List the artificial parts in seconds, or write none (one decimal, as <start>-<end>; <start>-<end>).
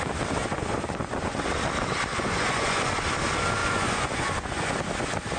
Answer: 0.4-1.5; 2.1-3.0; 3.6-4.7